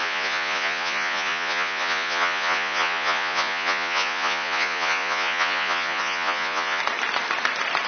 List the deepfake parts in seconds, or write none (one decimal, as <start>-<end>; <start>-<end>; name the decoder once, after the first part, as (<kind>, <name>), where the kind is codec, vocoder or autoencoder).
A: 0.0-6.8 (vocoder, Vocos)